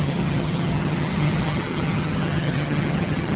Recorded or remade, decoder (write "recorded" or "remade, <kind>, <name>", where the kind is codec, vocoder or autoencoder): remade, vocoder, HiFi-GAN